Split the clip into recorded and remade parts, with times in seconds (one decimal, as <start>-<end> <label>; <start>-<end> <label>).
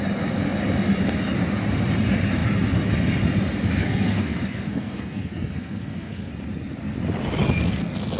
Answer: 0.0-3.8 recorded; 3.8-6.3 remade; 6.3-8.2 recorded